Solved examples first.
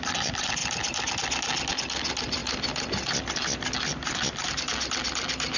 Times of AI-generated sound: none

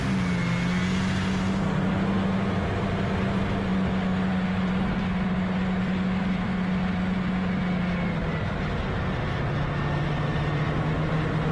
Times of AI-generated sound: none

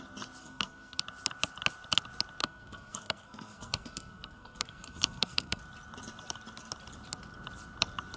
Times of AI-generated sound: 0.4-1.0; 2.4-5.6

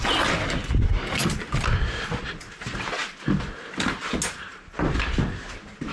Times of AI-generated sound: none

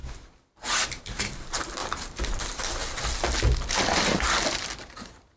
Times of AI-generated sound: 1.0-2.8; 4.8-5.4

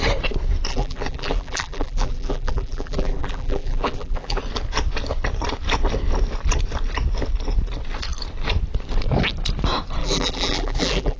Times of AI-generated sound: 0.7-4.4; 10.0-11.2

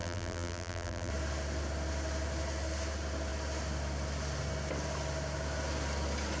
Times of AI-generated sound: 0.0-1.1

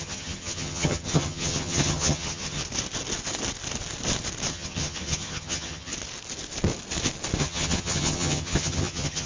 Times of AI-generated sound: 0.0-2.6; 4.5-5.9; 7.4-9.3